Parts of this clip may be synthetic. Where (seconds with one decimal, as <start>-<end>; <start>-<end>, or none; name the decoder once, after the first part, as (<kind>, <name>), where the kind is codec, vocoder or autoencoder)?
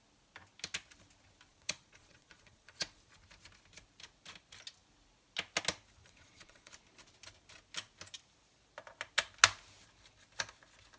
1.5-3.1 (vocoder, Vocos); 6.0-6.7